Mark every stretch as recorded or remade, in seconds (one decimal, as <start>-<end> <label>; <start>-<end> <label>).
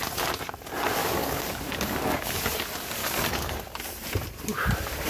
0.0-1.0 recorded; 1.0-2.4 remade; 2.4-3.0 recorded; 3.0-3.6 remade; 3.6-5.1 recorded